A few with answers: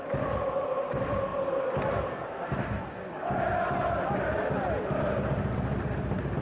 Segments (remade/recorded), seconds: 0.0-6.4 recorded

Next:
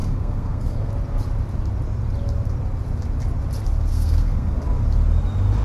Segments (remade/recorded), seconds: 0.0-0.9 remade; 0.9-3.9 recorded; 3.9-4.6 remade; 4.6-5.6 recorded

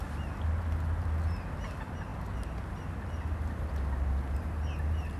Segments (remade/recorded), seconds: 0.0-5.2 recorded

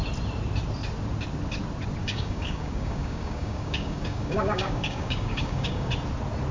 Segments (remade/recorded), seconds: 0.0-2.0 recorded; 2.0-5.9 remade; 5.9-6.5 recorded

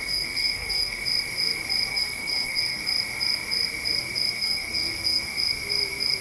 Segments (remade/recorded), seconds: 0.0-1.0 remade; 1.0-1.9 recorded; 1.9-2.8 remade; 2.8-4.3 recorded; 4.3-5.3 remade; 5.3-6.2 recorded